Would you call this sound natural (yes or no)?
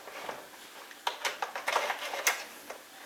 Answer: yes